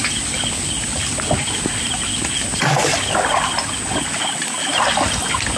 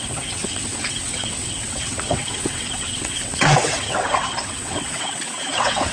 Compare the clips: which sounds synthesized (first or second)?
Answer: second